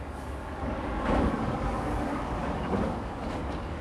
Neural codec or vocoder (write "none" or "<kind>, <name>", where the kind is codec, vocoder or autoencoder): codec, DAC